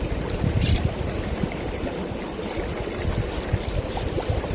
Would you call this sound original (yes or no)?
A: no